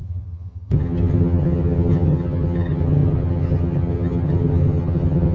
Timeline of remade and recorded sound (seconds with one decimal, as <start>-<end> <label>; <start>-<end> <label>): 0.0-5.3 remade